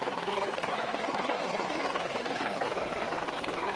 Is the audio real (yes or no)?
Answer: no